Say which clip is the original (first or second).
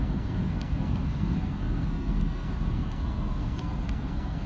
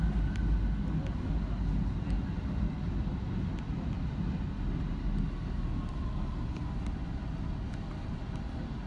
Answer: second